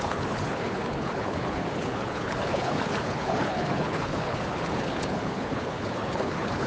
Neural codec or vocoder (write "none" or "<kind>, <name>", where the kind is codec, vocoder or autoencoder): codec, HILCodec